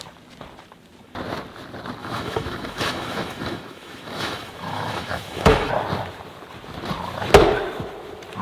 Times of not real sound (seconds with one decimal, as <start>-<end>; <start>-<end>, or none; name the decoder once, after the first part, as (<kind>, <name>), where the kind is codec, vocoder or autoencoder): 2.0-5.7 (autoencoder, DAC-VAE)